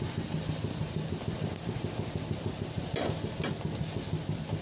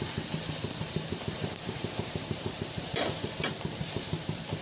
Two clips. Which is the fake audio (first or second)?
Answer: second